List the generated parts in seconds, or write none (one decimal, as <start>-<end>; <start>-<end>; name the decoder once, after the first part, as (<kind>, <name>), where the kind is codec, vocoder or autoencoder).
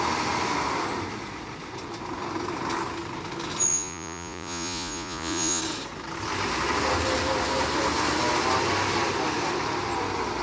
3.7-5.6 (vocoder, Vocos)